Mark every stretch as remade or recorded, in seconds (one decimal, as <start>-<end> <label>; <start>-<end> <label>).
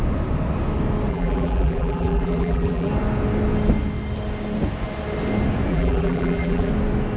0.0-1.1 recorded; 1.1-2.9 remade; 2.9-5.7 recorded; 5.7-6.7 remade; 6.7-7.2 recorded